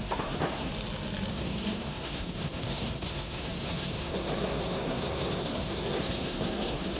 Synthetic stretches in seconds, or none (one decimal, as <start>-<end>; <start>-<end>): 0.0-0.7; 1.3-7.0